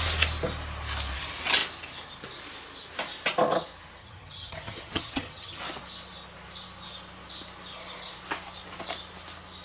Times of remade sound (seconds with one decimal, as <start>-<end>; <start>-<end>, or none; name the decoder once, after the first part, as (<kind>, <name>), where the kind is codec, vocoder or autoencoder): 4.0-5.6 (vocoder, HiFi-GAN)